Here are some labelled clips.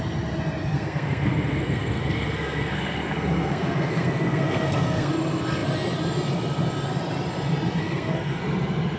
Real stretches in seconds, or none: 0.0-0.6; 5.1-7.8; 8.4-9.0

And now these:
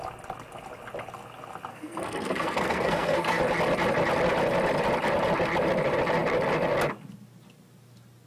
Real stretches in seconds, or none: 0.0-1.7; 3.4-8.3

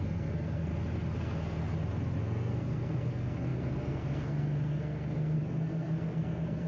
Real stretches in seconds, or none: 0.7-1.2; 1.6-2.2

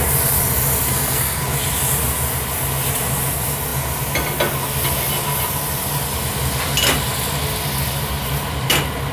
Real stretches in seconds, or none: 0.0-0.9; 1.4-9.1

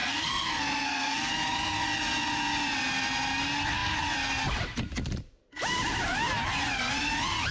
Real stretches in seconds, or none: 1.3-7.5

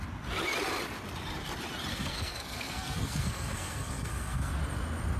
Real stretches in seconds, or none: 0.0-1.9; 4.5-5.2

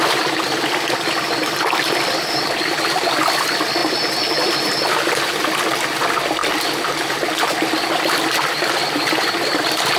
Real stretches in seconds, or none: 0.0-10.0

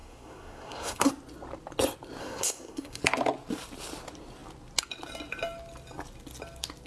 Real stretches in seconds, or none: 1.1-2.2; 3.0-6.9